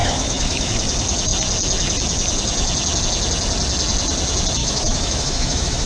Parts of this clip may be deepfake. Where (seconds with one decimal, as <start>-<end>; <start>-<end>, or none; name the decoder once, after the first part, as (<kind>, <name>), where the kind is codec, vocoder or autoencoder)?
0.0-0.7 (autoencoder, DAC-VAE); 4.6-5.9

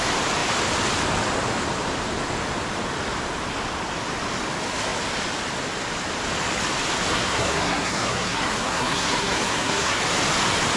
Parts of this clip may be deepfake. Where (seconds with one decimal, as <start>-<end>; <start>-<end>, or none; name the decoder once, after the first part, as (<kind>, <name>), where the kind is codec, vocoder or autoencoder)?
7.1-10.0 (codec, SNAC)

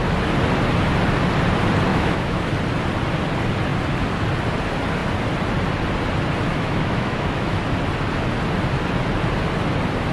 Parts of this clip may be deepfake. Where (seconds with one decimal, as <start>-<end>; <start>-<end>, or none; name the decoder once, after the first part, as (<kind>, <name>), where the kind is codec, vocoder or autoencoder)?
1.9-2.5 (autoencoder, DAC-VAE); 6.5-7.6

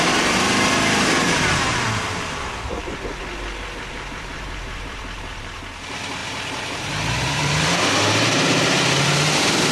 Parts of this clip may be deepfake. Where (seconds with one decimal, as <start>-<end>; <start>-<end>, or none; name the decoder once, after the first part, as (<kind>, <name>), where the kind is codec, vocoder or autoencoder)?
0.0-3.1 (vocoder, BigVGAN v2); 3.9-9.7

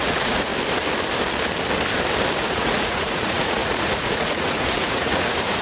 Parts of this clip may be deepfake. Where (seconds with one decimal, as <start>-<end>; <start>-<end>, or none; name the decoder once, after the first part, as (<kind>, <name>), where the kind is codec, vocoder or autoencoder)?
0.0-0.5 (vocoder, Vocos); 2.3-5.6

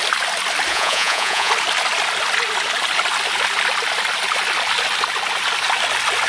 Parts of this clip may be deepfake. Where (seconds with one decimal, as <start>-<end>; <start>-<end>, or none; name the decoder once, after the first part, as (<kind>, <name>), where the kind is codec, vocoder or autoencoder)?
0.7-1.5 (vocoder, Vocos)